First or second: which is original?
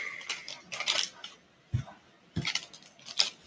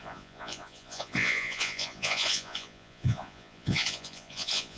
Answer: first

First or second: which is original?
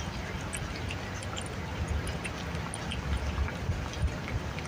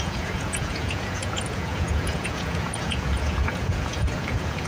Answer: first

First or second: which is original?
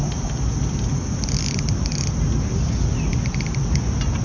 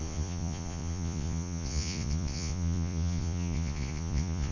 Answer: first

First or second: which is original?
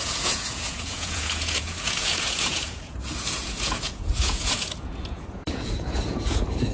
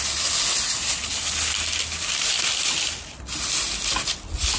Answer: second